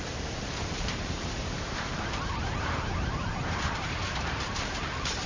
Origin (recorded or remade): remade